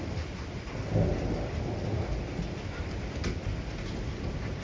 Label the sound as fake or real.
real